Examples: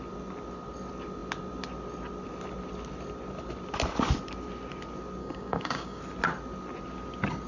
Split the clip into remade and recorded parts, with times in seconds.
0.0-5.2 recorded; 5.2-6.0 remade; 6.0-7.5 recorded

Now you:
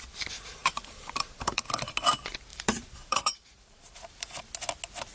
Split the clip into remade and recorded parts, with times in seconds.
0.0-0.6 recorded; 0.6-1.6 remade; 1.6-2.5 recorded; 2.5-4.4 remade; 4.4-5.1 recorded

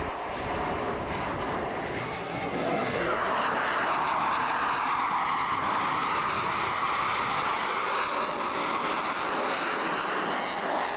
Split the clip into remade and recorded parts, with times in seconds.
0.0-2.0 recorded; 2.0-3.3 remade; 3.3-11.0 recorded

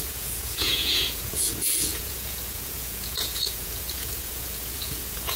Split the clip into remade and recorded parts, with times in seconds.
0.0-5.4 remade

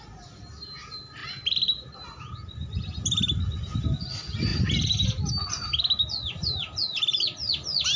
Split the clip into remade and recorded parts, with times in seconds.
0.0-8.0 recorded

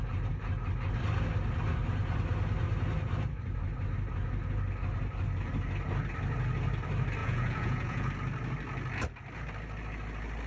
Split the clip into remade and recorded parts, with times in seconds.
0.0-7.2 recorded; 7.2-8.1 remade; 8.1-10.5 recorded

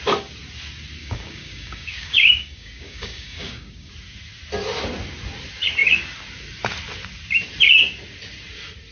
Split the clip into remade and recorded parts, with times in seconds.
0.0-1.0 recorded; 1.0-3.9 remade; 3.9-8.9 recorded

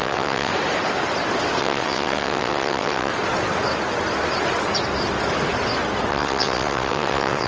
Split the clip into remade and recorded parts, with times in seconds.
0.0-0.5 remade; 0.5-1.6 recorded; 1.6-3.1 remade; 3.1-6.1 recorded; 6.1-7.5 remade